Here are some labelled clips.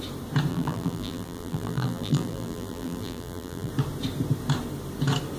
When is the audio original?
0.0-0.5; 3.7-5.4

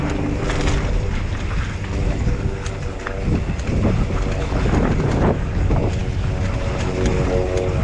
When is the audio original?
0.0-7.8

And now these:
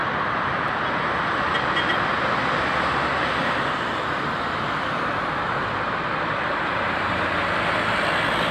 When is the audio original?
0.0-3.4

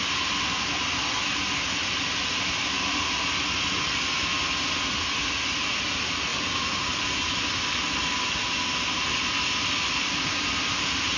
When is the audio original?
0.0-6.3; 7.1-11.2